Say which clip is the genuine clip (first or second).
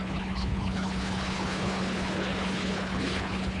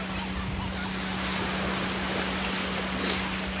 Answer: second